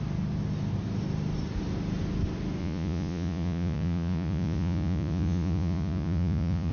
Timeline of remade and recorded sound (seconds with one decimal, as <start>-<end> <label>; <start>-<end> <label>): 0.0-2.6 recorded; 2.6-6.7 remade